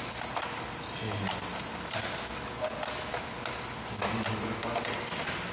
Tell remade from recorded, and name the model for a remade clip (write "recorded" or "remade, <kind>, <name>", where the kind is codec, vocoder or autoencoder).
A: recorded